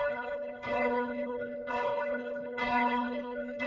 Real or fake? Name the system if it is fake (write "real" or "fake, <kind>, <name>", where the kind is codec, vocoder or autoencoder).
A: fake, codec, HILCodec